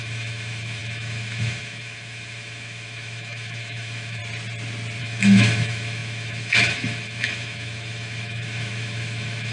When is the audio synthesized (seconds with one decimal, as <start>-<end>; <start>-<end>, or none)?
0.0-4.2; 5.0-9.5